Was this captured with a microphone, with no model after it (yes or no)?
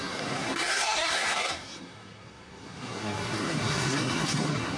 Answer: no